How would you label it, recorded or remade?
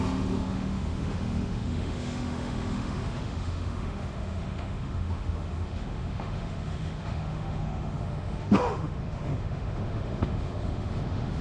remade